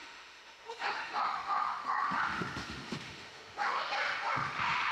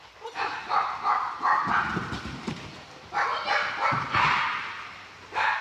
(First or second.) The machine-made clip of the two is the first